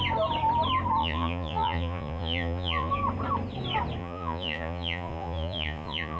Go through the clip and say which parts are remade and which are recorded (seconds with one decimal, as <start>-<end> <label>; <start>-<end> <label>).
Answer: 0.0-1.0 recorded; 1.0-2.9 remade; 2.9-4.0 recorded; 4.0-6.2 remade